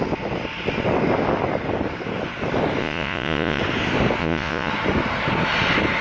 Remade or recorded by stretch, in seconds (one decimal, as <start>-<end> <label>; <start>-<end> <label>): 0.0-2.8 recorded; 2.8-3.6 remade; 3.6-4.2 recorded; 4.2-4.7 remade; 4.7-6.0 recorded